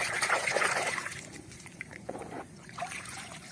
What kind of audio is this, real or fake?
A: fake